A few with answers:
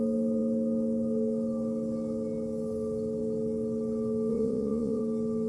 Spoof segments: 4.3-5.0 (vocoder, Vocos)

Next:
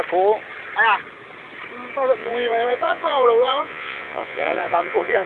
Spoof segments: 2.2-5.3 (vocoder, Vocos)